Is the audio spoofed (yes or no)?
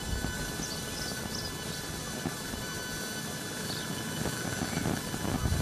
no